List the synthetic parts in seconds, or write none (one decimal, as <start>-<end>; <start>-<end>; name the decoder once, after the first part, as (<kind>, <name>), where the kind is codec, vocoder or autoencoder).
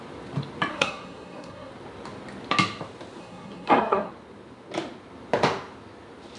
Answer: 0.7-1.7 (codec, SNAC); 3.2-4.1